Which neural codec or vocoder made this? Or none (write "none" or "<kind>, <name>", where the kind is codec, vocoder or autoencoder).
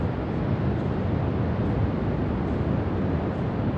none